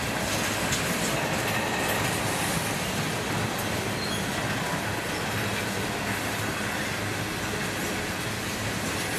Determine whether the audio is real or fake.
real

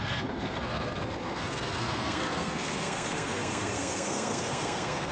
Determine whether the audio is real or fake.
fake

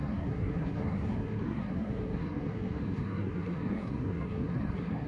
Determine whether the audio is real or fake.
fake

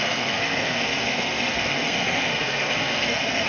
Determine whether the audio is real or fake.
fake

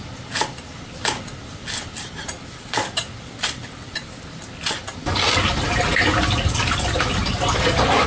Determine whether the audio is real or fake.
real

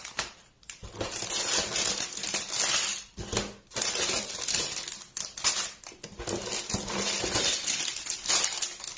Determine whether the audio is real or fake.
real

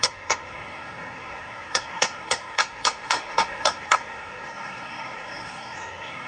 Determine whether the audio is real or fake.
fake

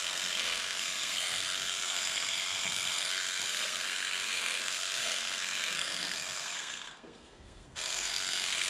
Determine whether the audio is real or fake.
fake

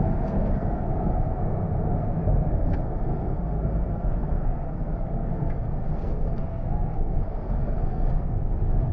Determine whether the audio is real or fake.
fake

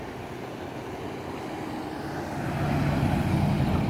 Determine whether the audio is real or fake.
real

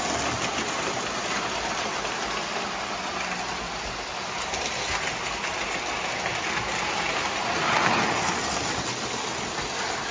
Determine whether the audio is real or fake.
real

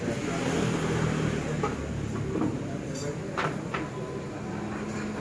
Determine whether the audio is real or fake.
real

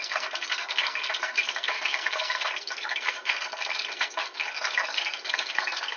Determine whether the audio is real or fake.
fake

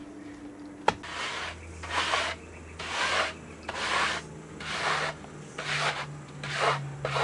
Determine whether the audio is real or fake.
real